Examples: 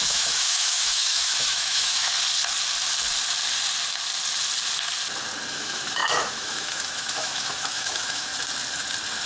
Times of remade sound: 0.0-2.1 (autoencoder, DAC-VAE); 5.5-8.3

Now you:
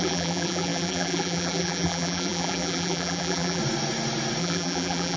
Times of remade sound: 0.0-3.6 (vocoder, BigVGAN v2); 4.4-5.2

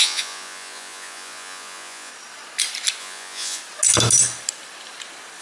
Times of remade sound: 0.0-2.1 (vocoder, Vocos); 3.0-3.6

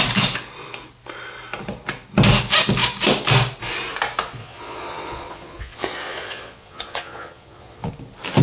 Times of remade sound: 4.4-7.9 (vocoder, Vocos)

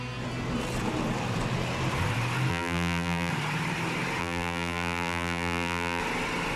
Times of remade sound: 2.5-3.3 (vocoder, BigVGAN v2); 4.2-6.0